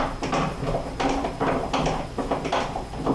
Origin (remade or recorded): recorded